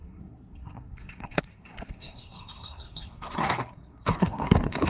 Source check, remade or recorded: remade